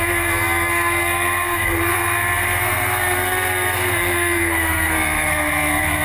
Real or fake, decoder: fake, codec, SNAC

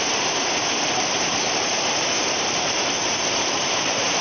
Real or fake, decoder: fake, vocoder, BigVGAN v2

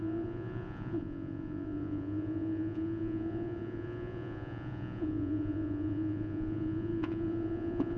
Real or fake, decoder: fake, vocoder, Vocos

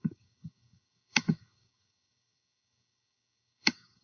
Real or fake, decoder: fake, codec, DAC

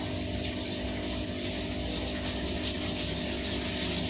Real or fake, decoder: real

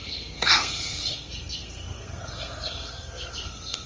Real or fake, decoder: fake, codec, SNAC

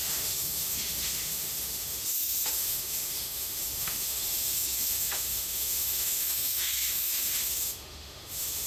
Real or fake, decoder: fake, autoencoder, DAC-VAE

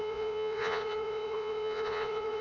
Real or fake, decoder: fake, vocoder, Vocos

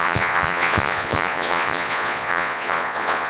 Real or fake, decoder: fake, vocoder, Vocos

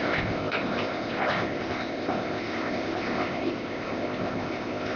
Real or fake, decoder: fake, codec, ZipCodec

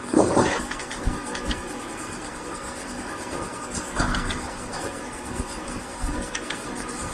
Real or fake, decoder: fake, codec, SNAC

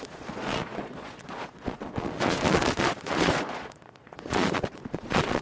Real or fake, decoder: fake, vocoder, Vocos